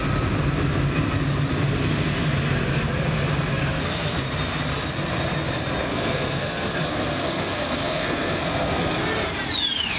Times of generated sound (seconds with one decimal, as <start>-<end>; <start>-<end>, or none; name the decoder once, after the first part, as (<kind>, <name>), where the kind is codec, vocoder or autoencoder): 3.6-4.2 (codec, SNAC); 5.9-9.0